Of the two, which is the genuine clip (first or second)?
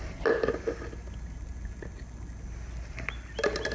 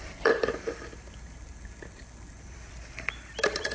first